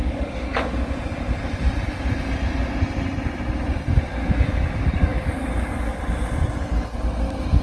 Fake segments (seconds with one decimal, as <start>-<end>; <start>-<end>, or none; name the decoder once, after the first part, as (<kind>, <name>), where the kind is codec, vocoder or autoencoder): 0.0-0.9 (codec, DAC); 4.1-6.0